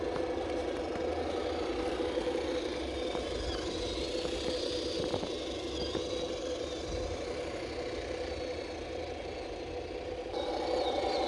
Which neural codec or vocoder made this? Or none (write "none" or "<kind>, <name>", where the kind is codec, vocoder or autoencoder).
none